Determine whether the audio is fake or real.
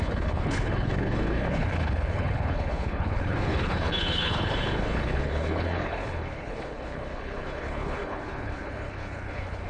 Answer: fake